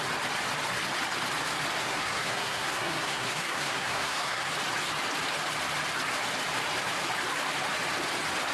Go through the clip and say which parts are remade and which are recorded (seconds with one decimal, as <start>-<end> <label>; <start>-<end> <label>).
0.0-1.8 recorded; 1.8-4.5 remade; 4.5-8.5 recorded